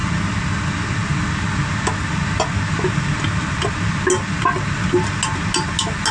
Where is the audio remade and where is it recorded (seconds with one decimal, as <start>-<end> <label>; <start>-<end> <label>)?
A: 0.0-6.1 recorded